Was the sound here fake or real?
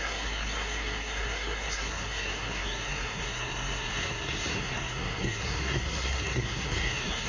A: fake